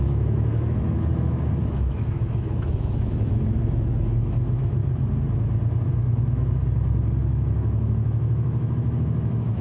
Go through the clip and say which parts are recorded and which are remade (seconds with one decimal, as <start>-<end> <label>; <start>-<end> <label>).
0.0-4.8 remade; 4.8-5.9 recorded; 5.9-6.6 remade; 6.6-7.2 recorded; 7.2-9.6 remade